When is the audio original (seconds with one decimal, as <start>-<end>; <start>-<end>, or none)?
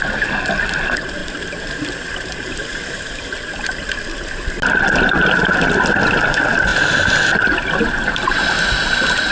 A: 0.0-1.2; 3.2-9.3